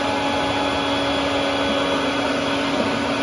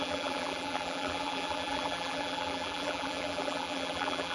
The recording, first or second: first